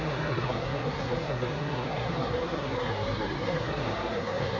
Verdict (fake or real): fake